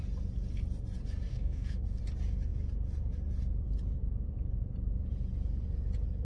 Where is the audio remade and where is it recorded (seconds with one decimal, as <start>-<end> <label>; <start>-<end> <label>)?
0.0-1.3 recorded; 1.3-2.0 remade; 2.0-6.2 recorded